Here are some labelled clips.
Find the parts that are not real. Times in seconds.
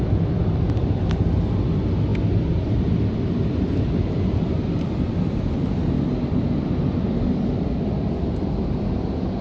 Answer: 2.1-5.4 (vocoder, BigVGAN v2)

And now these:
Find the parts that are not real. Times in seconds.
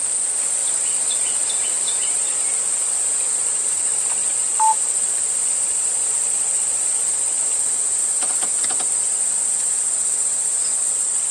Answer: 0.6-2.4 (vocoder, BigVGAN v2); 2.8-3.8; 4.2-7.1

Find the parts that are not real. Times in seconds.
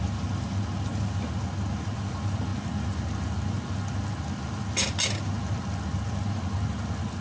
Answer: none